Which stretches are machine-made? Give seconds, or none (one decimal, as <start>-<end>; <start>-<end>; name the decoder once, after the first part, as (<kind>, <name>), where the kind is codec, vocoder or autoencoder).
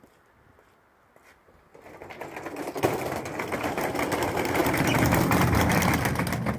4.6-6.0 (vocoder, BigVGAN v2)